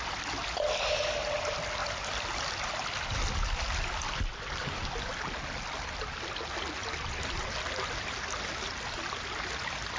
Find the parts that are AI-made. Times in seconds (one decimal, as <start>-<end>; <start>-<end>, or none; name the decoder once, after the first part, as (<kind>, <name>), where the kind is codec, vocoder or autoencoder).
none